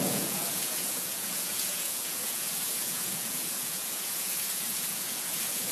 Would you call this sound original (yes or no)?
no